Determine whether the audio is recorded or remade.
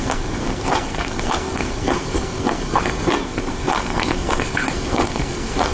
remade